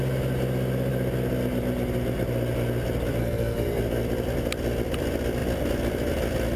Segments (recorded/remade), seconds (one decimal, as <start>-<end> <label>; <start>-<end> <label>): 0.0-3.2 recorded; 3.2-3.8 remade; 3.8-6.6 recorded